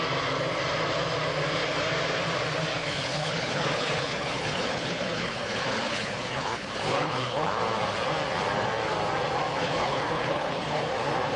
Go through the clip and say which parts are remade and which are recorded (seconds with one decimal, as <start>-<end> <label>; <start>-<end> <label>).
0.0-2.8 recorded; 2.8-7.6 remade; 7.6-9.5 recorded; 9.5-10.8 remade; 10.8-11.4 recorded